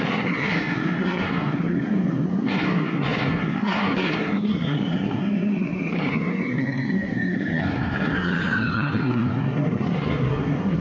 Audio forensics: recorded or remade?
remade